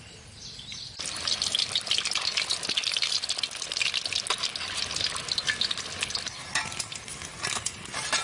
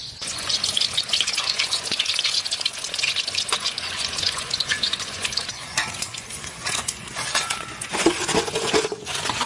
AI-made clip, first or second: second